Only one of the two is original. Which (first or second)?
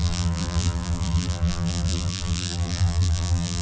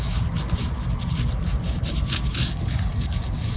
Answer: second